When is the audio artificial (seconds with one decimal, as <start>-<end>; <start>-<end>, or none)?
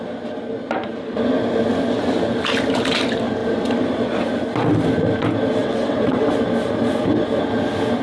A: 5.6-6.3